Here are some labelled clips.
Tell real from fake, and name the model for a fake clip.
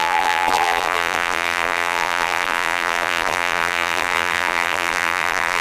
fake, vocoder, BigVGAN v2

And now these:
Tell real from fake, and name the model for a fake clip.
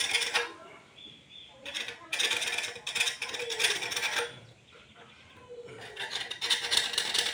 fake, vocoder, BigVGAN v2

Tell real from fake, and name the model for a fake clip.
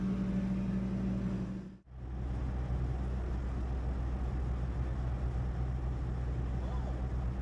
real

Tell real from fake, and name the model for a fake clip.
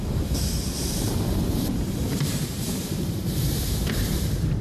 fake, vocoder, BigVGAN v2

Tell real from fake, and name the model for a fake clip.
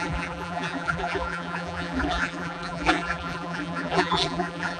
fake, vocoder, BigVGAN v2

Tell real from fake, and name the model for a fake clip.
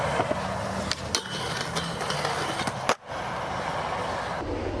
real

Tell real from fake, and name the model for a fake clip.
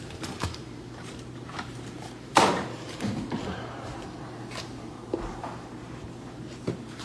fake, vocoder, BigVGAN v2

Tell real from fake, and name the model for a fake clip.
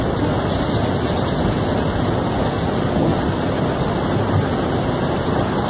real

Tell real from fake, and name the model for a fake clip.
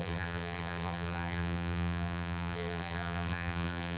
fake, vocoder, BigVGAN v2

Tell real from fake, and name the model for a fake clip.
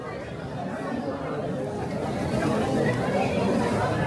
real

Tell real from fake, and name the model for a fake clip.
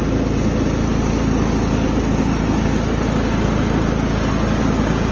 real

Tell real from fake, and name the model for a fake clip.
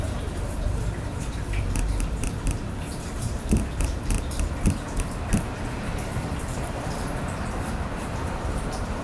fake, vocoder, BigVGAN v2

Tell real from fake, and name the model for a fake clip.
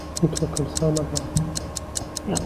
real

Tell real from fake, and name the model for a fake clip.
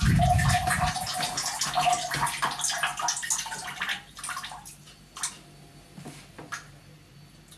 real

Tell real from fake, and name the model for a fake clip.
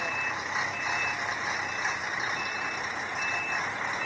fake, vocoder, BigVGAN v2